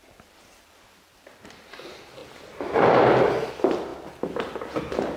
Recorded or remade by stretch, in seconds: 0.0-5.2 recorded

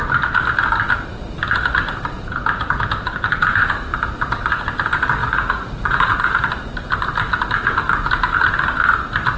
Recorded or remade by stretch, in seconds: 0.0-5.2 recorded; 5.2-6.1 remade; 6.1-9.4 recorded

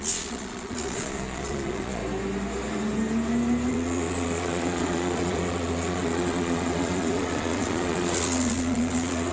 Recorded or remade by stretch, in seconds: 0.0-2.0 remade; 2.0-3.7 recorded; 3.7-9.3 remade

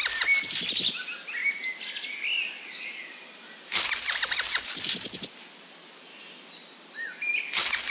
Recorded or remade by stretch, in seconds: 0.0-7.9 recorded